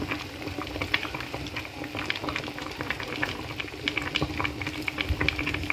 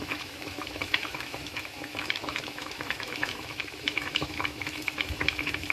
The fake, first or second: second